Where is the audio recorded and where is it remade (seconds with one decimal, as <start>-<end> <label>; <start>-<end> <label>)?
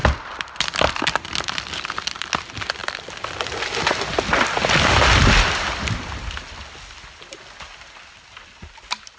0.0-9.2 recorded